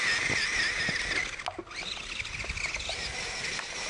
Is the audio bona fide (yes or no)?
yes